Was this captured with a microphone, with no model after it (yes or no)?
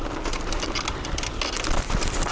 yes